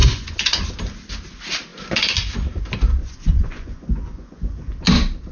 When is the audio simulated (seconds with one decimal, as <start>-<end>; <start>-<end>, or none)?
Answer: 0.0-0.6; 3.0-4.7